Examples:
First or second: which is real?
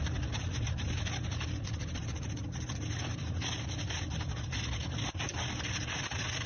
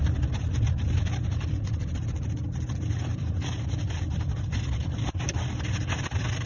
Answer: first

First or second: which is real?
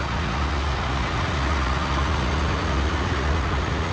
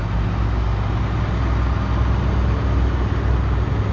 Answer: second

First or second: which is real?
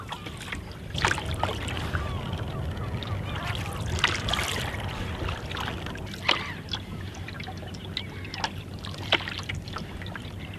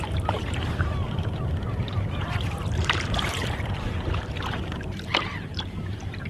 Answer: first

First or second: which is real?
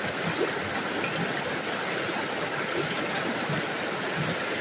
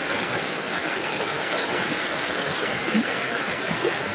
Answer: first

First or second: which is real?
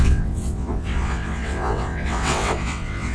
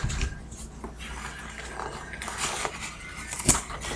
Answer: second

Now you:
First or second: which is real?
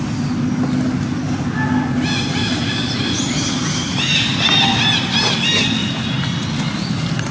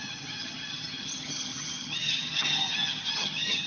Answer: first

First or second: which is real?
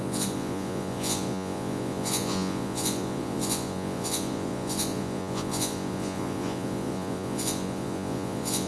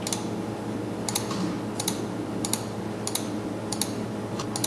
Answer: second